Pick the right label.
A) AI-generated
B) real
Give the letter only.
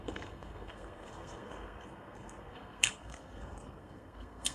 A